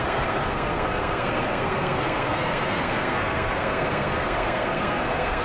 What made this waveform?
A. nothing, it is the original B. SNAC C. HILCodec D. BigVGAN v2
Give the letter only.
B